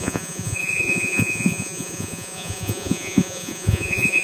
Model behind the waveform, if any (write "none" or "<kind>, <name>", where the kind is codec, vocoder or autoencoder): vocoder, Vocos